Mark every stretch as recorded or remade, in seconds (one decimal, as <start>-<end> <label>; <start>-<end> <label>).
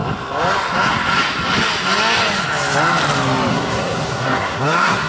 0.0-3.5 recorded; 3.5-5.1 remade